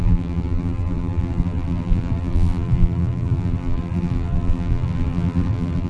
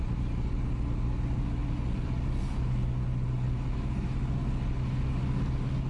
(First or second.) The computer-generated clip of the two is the first